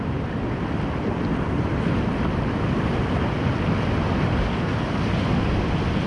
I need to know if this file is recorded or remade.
recorded